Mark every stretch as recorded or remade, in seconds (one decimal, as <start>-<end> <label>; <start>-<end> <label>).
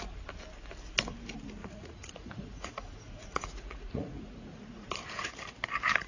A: 0.0-1.6 recorded; 1.6-5.3 remade; 5.3-6.1 recorded